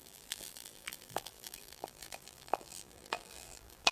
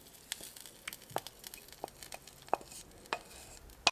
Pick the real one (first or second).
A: second